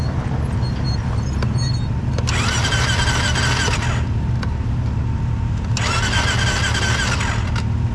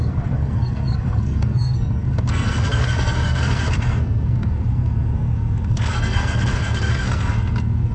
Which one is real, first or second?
first